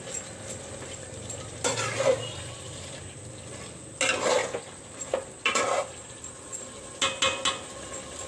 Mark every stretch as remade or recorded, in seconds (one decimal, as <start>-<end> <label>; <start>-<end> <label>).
0.0-8.3 recorded